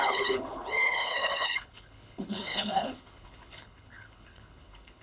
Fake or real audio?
fake